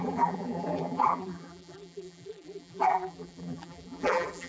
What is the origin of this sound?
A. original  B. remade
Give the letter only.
B